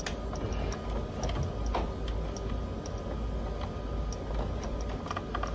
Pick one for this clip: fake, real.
real